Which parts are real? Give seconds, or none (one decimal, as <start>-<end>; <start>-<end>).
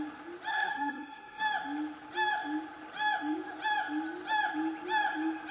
0.0-0.5; 1.4-5.5